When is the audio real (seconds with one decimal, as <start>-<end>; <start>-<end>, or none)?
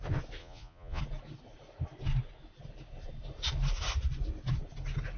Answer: 0.0-0.4; 1.0-5.2